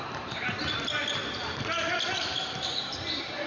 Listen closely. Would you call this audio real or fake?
fake